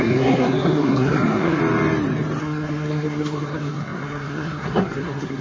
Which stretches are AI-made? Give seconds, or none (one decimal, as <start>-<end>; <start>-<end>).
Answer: 0.0-1.6; 2.4-5.4